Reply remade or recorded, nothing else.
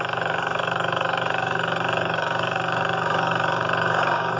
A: remade